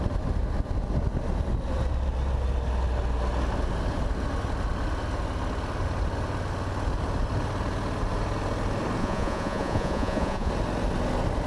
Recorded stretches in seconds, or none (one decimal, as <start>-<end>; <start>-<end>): 0.0-9.0; 10.5-11.5